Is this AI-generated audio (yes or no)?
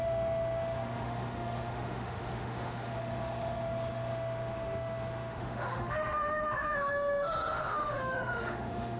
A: yes